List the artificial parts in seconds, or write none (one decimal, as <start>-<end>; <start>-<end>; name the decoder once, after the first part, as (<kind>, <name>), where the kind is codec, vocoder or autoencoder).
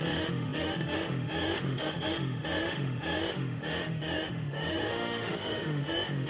0.0-6.3 (autoencoder, DAC-VAE)